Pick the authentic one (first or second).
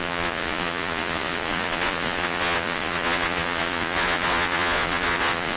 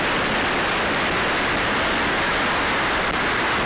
second